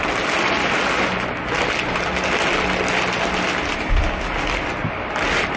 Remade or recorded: recorded